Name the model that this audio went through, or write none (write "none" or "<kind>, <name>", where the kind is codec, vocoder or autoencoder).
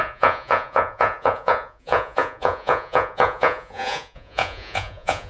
vocoder, Vocos